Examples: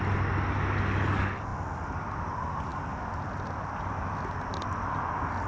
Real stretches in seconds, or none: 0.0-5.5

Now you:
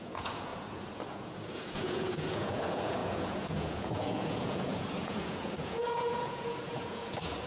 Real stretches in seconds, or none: none

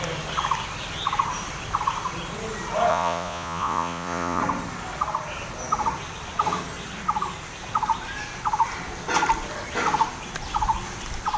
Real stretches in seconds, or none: 0.0-2.9; 4.4-11.4

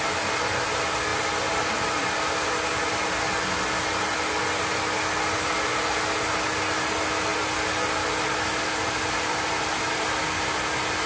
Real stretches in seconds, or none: 0.0-11.1

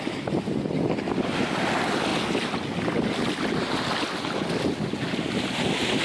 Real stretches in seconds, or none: 0.0-6.0

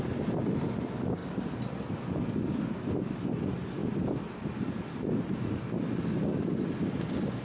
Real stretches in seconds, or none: 0.0-7.4

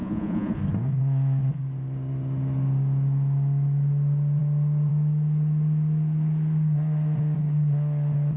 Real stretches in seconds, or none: 0.6-8.4